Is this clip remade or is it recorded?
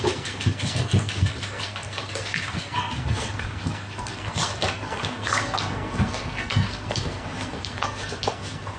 remade